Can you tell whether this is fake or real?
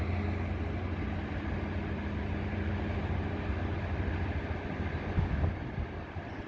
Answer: real